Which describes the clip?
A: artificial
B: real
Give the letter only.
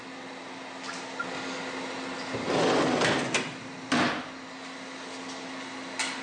B